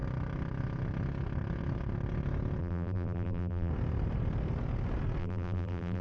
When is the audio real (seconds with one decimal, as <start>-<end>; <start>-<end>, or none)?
0.0-2.6; 3.7-5.2